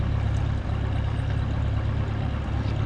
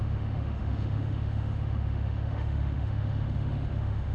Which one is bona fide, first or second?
first